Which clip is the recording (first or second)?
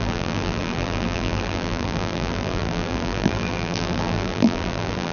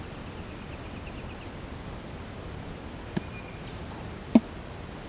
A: second